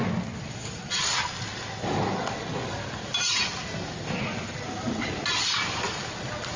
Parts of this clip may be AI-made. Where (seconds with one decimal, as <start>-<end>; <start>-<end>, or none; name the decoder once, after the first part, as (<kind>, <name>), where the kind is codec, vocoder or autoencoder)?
none